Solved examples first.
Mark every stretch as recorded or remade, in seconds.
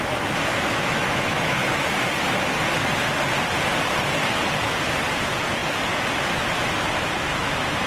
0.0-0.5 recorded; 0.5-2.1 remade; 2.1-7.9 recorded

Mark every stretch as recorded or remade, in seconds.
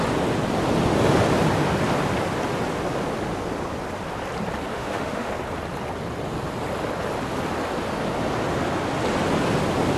0.0-4.7 recorded; 4.7-5.3 remade; 5.3-10.0 recorded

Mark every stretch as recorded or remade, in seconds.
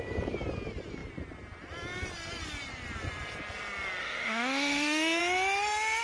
0.0-4.0 recorded; 4.0-5.2 remade; 5.2-6.0 recorded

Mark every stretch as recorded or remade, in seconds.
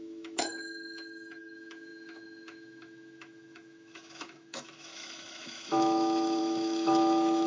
0.0-7.5 remade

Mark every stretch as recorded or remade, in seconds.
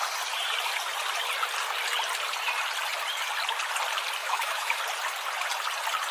0.0-4.2 recorded; 4.2-4.8 remade; 4.8-6.1 recorded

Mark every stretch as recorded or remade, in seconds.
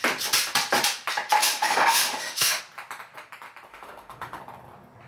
0.0-1.4 recorded; 1.4-2.6 remade; 2.6-3.7 recorded; 3.7-4.4 remade; 4.4-5.1 recorded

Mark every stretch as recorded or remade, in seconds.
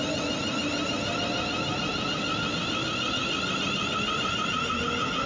0.0-5.3 recorded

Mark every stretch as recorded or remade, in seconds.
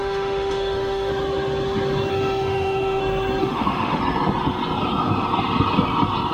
0.0-1.1 remade; 1.1-2.1 recorded; 2.1-3.0 remade; 3.0-3.4 recorded; 3.4-4.0 remade; 4.0-6.3 recorded